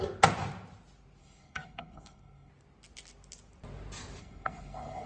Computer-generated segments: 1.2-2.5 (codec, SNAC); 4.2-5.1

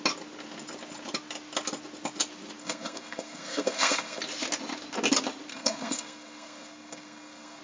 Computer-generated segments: 2.6-4.2 (codec, SNAC); 5.5-7.6